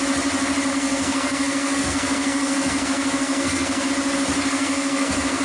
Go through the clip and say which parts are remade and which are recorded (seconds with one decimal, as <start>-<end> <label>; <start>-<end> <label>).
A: 0.0-0.7 recorded; 0.7-3.9 remade; 3.9-4.5 recorded; 4.5-5.4 remade